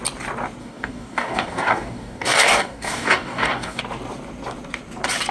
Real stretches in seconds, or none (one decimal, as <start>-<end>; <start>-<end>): 0.0-0.6; 3.8-5.3